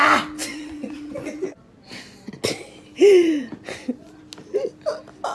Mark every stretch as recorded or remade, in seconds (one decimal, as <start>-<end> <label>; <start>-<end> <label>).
0.0-0.4 recorded; 0.4-1.7 remade; 1.7-2.9 recorded; 2.9-4.2 remade; 4.2-5.3 recorded